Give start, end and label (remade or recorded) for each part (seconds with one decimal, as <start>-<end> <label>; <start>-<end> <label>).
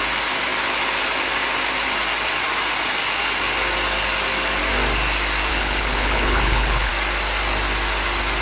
0.0-5.5 recorded; 5.5-6.9 remade; 6.9-8.4 recorded